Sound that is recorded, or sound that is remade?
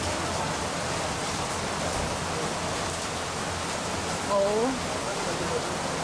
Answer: recorded